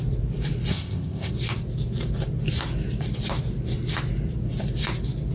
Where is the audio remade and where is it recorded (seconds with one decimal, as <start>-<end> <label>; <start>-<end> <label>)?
0.0-0.7 recorded; 0.7-1.3 remade; 1.3-5.3 recorded